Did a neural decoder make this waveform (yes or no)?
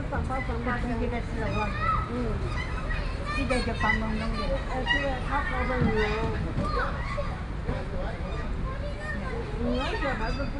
no